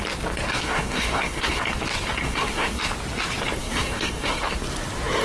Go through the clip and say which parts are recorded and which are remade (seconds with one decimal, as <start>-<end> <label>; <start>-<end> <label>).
0.0-0.5 recorded; 0.5-1.6 remade; 1.6-2.2 recorded; 2.2-2.8 remade; 2.8-3.6 recorded; 3.6-4.4 remade; 4.4-5.2 recorded

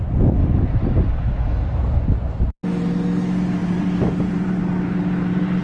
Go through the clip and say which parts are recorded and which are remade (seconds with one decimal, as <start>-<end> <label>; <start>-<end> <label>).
0.0-0.4 recorded; 0.4-2.0 remade; 2.0-3.6 recorded; 3.6-4.6 remade; 4.6-5.6 recorded

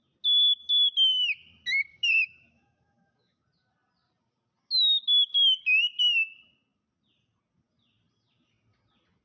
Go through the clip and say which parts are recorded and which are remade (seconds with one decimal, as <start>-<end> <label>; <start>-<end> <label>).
0.0-1.9 recorded; 1.9-3.4 remade; 3.4-9.2 recorded

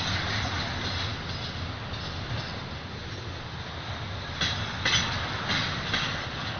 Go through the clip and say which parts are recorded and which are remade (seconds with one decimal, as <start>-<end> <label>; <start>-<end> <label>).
0.0-6.6 recorded